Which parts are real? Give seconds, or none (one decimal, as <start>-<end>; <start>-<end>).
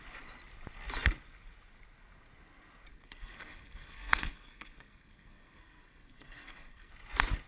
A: 0.0-2.9; 6.9-7.5